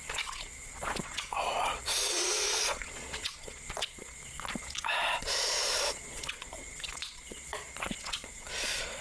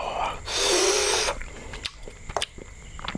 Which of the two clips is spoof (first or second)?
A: first